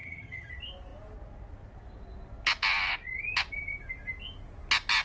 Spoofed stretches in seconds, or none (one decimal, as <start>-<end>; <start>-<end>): 0.0-0.5